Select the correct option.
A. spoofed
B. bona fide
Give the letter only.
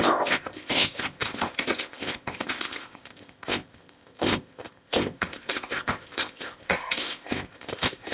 A